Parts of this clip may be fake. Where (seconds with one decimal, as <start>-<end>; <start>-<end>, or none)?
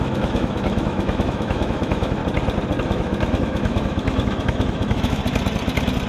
0.0-2.2; 2.8-5.2